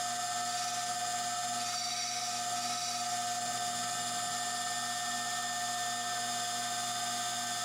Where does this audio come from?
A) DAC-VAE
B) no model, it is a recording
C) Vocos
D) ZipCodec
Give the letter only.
B